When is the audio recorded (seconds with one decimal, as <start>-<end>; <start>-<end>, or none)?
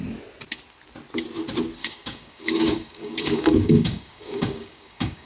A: 0.0-1.8